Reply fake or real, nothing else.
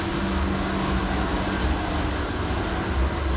real